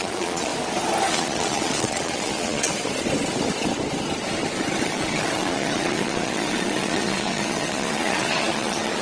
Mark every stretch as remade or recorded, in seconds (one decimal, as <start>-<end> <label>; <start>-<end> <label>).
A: 0.0-0.5 remade; 0.5-1.1 recorded; 1.1-2.7 remade; 2.7-4.8 recorded; 4.8-9.0 remade

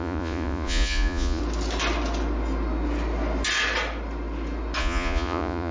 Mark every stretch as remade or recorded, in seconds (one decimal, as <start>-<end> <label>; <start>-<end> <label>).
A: 0.0-1.4 remade; 1.4-4.8 recorded; 4.8-5.7 remade

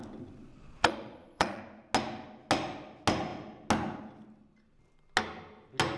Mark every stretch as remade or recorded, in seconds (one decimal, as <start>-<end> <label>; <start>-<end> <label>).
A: 0.0-0.5 recorded; 0.5-1.6 remade; 1.6-6.0 recorded